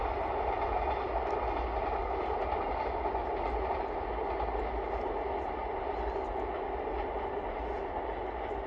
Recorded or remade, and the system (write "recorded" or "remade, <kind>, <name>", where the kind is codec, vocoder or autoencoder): recorded